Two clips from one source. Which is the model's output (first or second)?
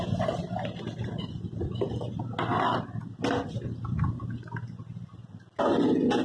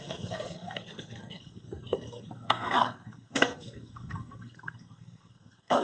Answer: second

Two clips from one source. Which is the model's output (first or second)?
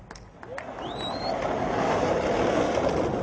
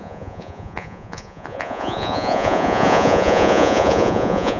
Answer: second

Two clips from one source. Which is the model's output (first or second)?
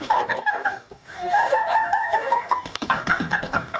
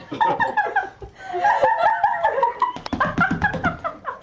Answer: first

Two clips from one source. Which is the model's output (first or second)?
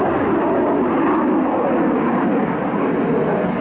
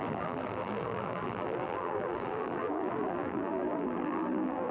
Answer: second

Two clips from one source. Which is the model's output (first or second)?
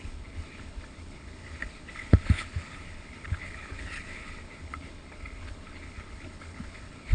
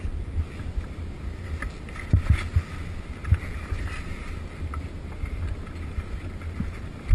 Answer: first